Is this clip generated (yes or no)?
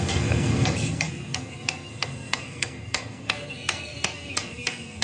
yes